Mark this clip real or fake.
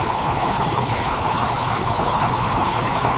fake